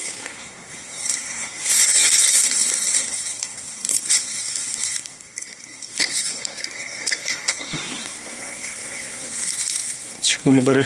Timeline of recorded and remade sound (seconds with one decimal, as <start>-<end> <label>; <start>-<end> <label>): 0.0-10.9 remade